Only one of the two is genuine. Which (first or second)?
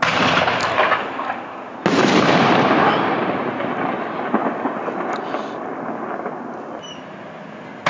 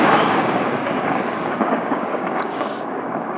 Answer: first